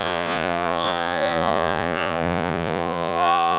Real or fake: fake